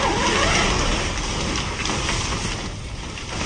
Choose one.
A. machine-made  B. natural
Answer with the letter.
B